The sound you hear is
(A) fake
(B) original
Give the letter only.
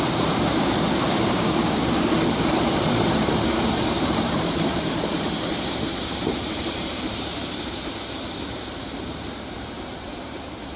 A